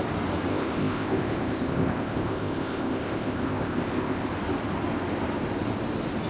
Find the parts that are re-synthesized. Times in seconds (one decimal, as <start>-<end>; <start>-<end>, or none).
0.5-4.3